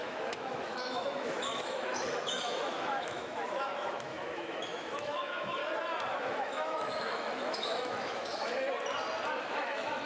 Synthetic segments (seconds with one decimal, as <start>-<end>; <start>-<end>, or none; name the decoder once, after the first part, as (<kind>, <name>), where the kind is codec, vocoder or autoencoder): 0.0-5.6 (autoencoder, DAC-VAE); 6.2-8.5; 9.4-10.1